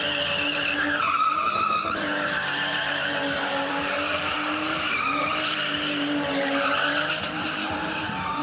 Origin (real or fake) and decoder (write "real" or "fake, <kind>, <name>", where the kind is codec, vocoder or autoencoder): fake, vocoder, BigVGAN v2